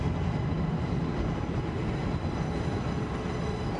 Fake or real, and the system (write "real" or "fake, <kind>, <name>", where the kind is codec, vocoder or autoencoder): real